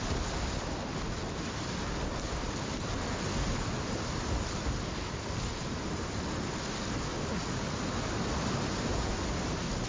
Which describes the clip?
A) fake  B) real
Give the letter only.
B